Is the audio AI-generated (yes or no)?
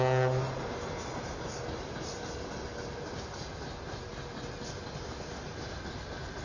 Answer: no